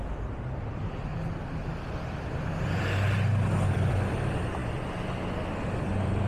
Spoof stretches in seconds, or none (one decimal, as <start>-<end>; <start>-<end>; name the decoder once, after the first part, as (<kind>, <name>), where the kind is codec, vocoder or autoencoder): 0.0-1.1 (vocoder, BigVGAN v2); 3.7-4.6; 5.6-6.3